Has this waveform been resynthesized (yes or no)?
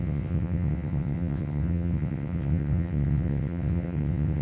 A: yes